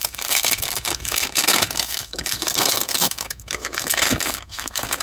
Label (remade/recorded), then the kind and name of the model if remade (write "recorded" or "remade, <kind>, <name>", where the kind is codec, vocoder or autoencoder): remade, codec, SNAC